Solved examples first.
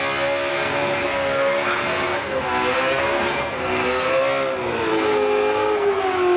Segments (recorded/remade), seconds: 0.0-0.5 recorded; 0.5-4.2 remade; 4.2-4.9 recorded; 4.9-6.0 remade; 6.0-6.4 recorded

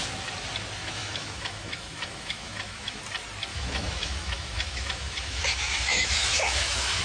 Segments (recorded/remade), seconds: 0.0-0.8 recorded; 0.8-3.0 remade; 3.0-3.5 recorded; 3.5-7.0 remade

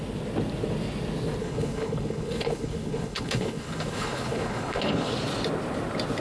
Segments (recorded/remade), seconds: 0.0-1.4 recorded; 1.4-5.1 remade; 5.1-6.2 recorded

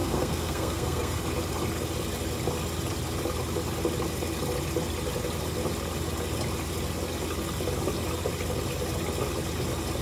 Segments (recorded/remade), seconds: 0.0-1.2 remade; 1.2-10.0 recorded

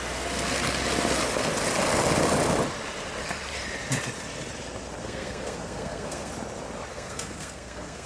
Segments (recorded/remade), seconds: 0.0-5.0 recorded; 5.0-6.3 remade; 6.3-6.9 recorded; 6.9-8.1 remade

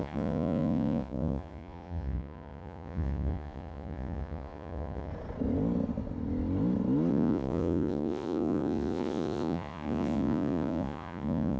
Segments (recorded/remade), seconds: 0.0-5.1 remade; 5.1-7.1 recorded; 7.1-11.6 remade

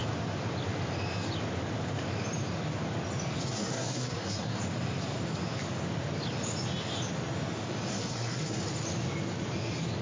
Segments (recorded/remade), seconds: 0.0-3.5 recorded; 3.5-4.6 remade; 4.6-7.9 recorded; 7.9-8.6 remade; 8.6-10.0 recorded

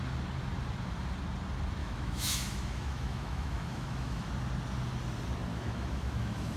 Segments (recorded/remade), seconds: 0.0-1.8 recorded; 1.8-4.3 remade; 4.3-5.5 recorded; 5.5-6.6 remade